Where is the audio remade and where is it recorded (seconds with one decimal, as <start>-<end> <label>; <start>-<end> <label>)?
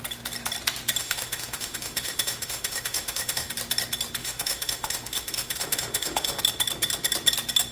0.0-1.0 recorded; 1.0-3.5 remade; 3.5-4.2 recorded; 4.2-6.4 remade; 6.4-7.7 recorded